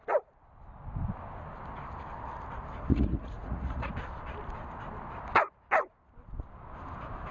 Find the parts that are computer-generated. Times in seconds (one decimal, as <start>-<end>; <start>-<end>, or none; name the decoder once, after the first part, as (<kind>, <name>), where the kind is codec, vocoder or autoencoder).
2.9-3.9 (vocoder, Vocos)